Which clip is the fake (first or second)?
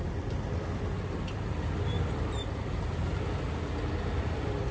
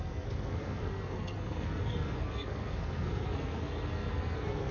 second